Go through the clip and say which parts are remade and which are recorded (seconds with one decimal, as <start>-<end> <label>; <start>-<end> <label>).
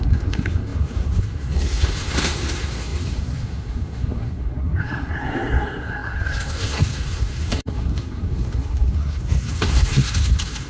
0.0-10.7 remade